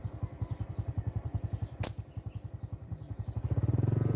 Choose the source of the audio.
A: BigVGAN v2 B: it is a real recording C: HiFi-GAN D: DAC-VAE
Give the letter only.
B